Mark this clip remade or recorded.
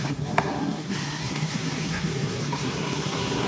remade